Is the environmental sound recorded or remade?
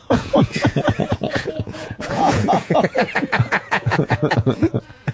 remade